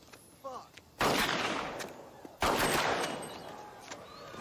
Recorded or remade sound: recorded